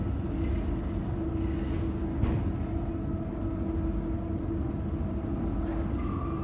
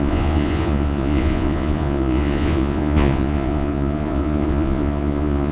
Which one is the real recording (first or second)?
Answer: first